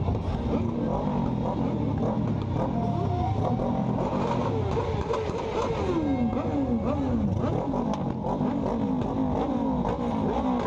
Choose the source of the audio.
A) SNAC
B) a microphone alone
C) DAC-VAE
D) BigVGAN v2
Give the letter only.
B